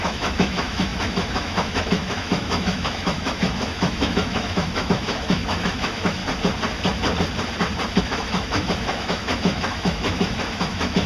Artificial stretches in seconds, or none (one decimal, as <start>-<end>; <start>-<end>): 0.0-6.2; 8.0-11.1